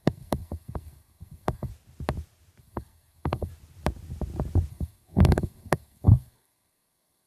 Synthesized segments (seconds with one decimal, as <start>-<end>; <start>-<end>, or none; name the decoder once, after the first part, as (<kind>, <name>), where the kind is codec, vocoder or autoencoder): 0.0-1.7 (codec, SNAC); 2.6-3.5; 4.7-7.3